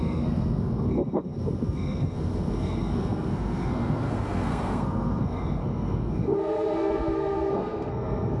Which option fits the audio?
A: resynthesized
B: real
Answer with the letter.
A